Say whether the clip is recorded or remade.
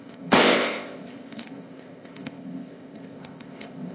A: remade